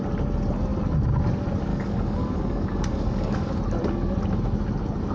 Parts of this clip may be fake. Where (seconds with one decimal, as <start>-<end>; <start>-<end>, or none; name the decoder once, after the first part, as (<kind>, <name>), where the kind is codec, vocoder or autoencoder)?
1.7-3.6 (codec, DAC)